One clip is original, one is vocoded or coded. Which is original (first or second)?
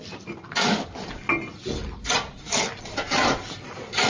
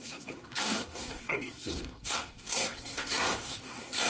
first